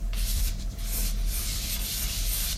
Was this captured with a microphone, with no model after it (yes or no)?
no